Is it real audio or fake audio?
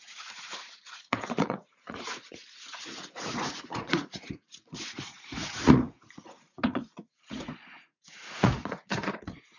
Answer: fake